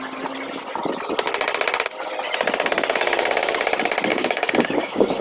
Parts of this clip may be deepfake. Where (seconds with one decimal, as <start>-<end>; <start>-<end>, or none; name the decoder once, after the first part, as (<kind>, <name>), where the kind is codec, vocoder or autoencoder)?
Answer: 4.1-5.2 (codec, DAC)